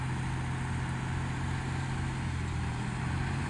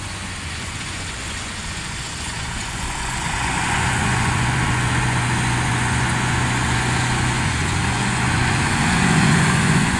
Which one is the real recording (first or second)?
first